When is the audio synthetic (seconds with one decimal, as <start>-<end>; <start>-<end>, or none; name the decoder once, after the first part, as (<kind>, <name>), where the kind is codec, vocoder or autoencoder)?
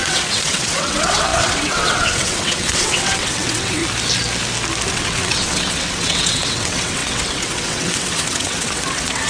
0.0-3.8 (vocoder, WaveNeXt); 4.9-9.3